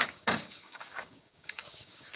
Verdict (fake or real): fake